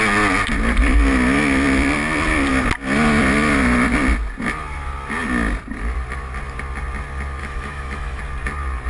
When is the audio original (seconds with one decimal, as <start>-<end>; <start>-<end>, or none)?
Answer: 0.0-7.4; 8.2-8.9